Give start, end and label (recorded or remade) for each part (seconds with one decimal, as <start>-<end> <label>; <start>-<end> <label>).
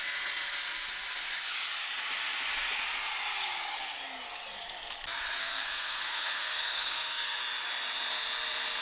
0.0-5.4 recorded; 5.4-7.4 remade; 7.4-8.8 recorded